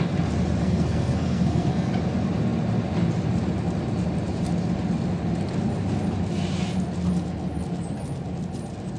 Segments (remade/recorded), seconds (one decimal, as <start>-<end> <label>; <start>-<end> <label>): 0.0-0.6 recorded; 0.6-1.9 remade; 1.9-9.0 recorded